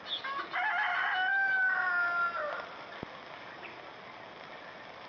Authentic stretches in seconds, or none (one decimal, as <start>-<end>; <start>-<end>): 0.0-5.1